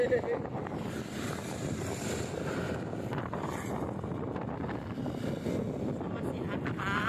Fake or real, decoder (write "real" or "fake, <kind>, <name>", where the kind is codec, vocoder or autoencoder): real